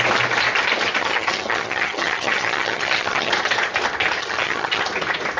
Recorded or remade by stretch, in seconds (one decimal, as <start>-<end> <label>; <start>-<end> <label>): 0.0-1.0 recorded; 1.0-3.3 remade; 3.3-4.2 recorded; 4.2-4.8 remade; 4.8-5.4 recorded